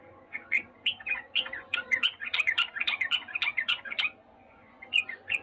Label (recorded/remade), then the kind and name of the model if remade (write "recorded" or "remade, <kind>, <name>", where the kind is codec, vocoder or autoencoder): remade, vocoder, Vocos